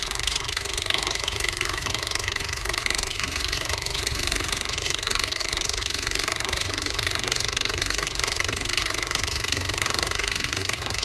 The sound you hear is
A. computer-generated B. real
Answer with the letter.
A